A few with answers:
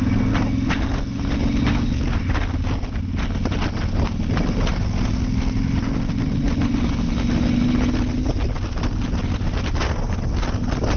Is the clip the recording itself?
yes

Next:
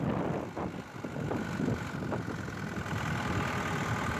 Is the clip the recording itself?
yes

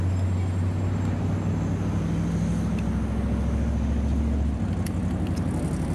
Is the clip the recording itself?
yes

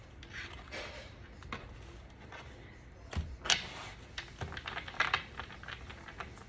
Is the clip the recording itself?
yes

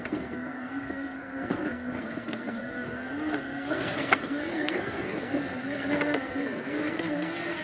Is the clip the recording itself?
no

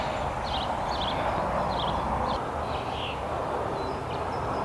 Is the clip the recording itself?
yes